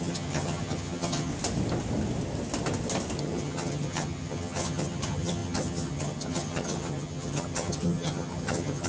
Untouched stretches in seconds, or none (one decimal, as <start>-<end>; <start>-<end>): 1.3-3.2